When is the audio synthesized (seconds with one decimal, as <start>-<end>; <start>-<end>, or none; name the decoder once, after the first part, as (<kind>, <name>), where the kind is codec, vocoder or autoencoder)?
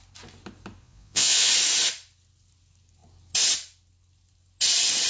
0.8-1.5 (vocoder, Vocos)